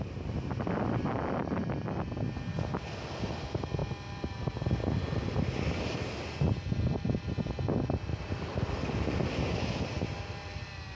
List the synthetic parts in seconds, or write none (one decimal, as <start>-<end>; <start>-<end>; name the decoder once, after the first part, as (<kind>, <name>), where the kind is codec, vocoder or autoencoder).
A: none